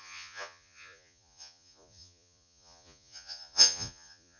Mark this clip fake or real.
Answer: fake